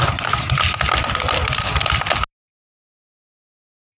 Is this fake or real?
real